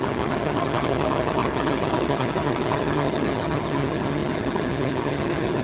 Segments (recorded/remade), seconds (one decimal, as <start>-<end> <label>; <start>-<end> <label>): 0.0-5.6 remade